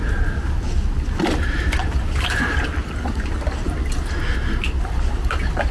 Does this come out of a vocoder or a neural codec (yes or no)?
no